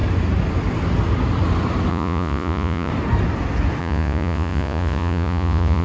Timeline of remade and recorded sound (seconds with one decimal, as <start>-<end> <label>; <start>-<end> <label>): 0.0-1.9 recorded; 1.9-2.9 remade; 2.9-3.8 recorded; 3.8-5.8 remade